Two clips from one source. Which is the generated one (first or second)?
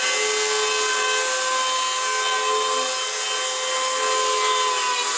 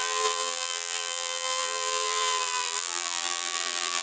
second